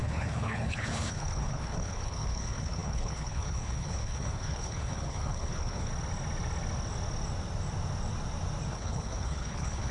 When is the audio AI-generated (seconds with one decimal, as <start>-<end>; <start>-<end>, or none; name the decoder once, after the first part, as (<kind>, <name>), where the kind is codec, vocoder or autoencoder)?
0.0-5.9 (codec, HILCodec); 8.7-9.9